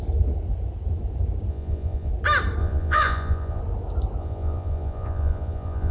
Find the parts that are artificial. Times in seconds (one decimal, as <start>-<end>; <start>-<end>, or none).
1.5-2.1; 2.6-3.6; 4.2-5.9